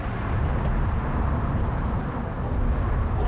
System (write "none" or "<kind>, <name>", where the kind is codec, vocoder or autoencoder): vocoder, BigVGAN v2